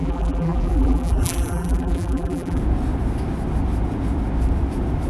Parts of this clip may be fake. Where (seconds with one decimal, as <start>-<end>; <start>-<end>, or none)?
0.0-2.6